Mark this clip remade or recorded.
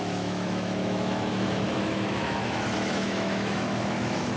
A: remade